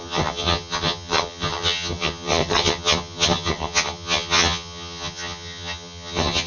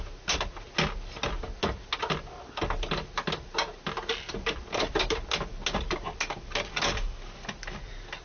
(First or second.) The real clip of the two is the second